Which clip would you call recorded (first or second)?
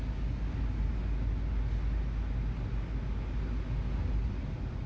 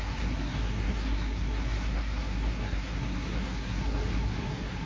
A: first